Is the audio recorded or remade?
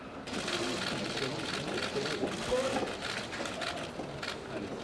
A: recorded